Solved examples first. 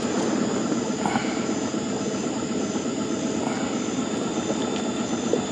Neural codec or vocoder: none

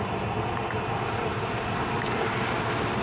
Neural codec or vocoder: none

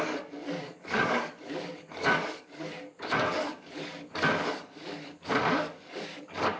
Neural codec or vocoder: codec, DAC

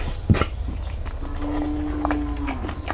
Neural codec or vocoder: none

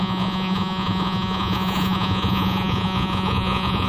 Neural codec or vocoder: vocoder, Vocos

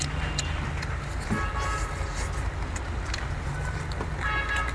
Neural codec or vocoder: none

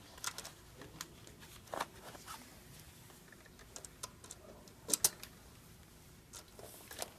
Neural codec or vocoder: none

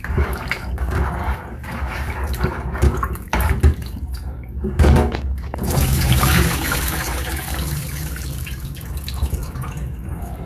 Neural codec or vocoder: codec, DAC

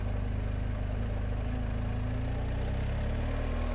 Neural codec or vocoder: none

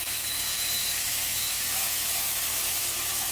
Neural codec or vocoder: autoencoder, DAC-VAE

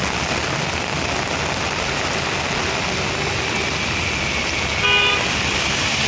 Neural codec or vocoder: none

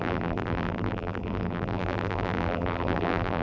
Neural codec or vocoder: vocoder, BigVGAN v2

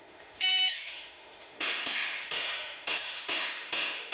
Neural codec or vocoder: autoencoder, DAC-VAE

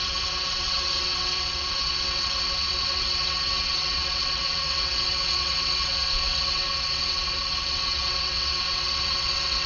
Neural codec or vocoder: vocoder, WaveNeXt